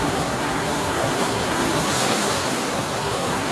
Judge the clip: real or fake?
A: fake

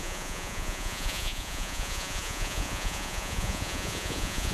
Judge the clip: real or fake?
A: fake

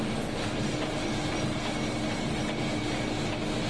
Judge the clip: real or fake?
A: real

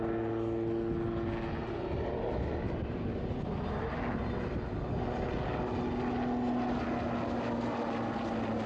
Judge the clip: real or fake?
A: real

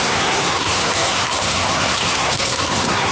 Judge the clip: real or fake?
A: fake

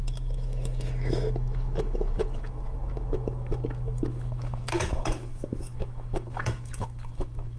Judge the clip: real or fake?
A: fake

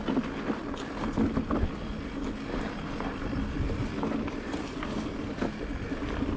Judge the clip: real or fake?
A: real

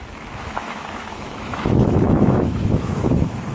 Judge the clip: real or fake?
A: fake